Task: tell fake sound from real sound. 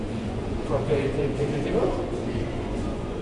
fake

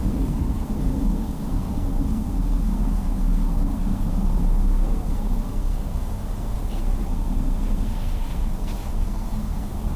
fake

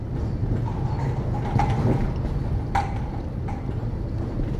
real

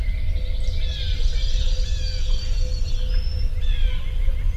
real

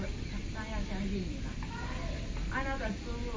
real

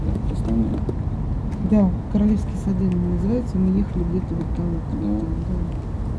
real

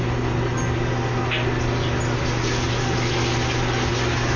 real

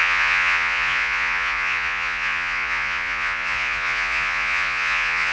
fake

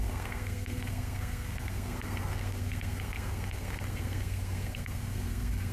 fake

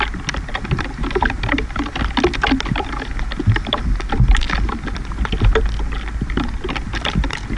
real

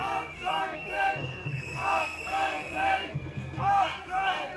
fake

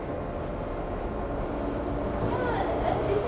real